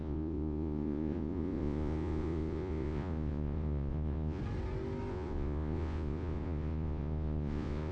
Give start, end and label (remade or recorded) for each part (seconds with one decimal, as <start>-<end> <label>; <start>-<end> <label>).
0.0-4.4 remade; 4.4-5.1 recorded; 5.1-7.9 remade